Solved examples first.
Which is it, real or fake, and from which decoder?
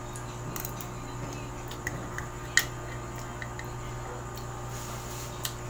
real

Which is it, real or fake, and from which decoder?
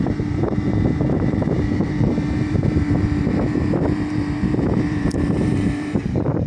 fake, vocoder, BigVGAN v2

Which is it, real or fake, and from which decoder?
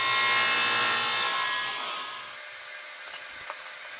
real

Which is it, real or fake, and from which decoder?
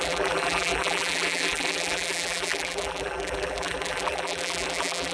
fake, vocoder, BigVGAN v2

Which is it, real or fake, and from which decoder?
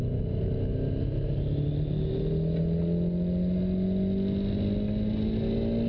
real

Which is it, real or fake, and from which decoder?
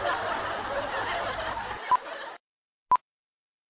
real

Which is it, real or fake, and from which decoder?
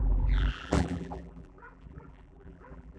fake, vocoder, BigVGAN v2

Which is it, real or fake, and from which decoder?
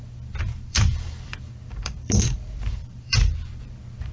fake, vocoder, BigVGAN v2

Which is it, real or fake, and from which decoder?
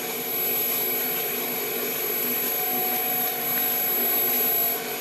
real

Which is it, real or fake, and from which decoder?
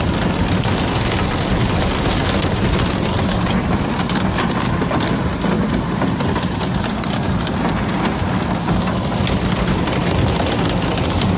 real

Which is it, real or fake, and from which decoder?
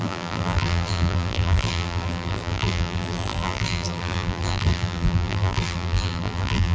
fake, vocoder, BigVGAN v2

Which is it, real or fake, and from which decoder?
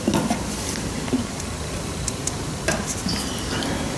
real